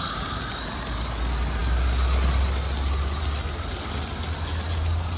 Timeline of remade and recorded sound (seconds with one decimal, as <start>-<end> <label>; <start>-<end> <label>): 0.0-5.2 recorded